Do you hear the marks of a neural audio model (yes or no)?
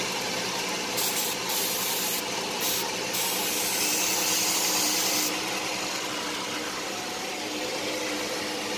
no